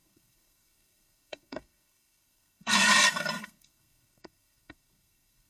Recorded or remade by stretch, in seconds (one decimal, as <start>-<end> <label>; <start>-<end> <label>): 0.0-5.5 remade